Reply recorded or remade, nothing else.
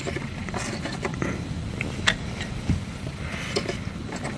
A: recorded